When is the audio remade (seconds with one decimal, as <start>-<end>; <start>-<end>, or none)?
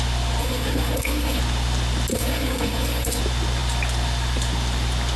0.4-1.4; 2.1-3.2